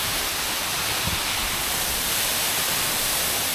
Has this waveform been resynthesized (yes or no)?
yes